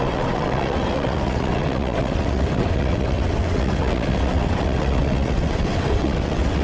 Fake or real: fake